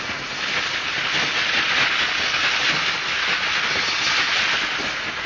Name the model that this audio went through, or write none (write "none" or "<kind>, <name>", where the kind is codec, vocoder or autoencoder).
none